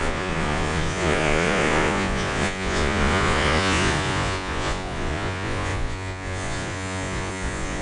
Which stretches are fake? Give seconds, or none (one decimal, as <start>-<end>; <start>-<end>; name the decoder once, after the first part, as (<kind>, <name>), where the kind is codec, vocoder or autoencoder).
0.0-7.8 (vocoder, Vocos)